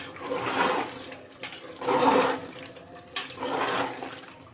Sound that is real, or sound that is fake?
real